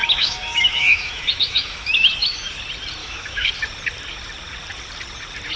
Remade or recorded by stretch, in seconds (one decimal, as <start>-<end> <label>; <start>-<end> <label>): 0.0-2.5 remade; 2.5-3.0 recorded; 3.0-3.5 remade; 3.5-5.6 recorded